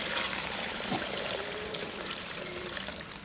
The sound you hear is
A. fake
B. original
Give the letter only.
A